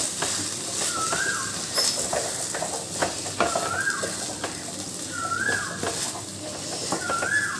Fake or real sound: real